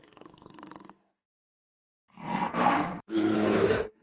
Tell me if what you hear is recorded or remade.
remade